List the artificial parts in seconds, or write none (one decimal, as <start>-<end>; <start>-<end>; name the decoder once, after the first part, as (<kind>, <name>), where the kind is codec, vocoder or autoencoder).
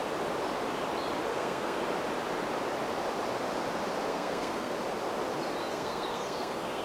1.3-1.8 (codec, SNAC); 4.1-4.7; 5.6-6.8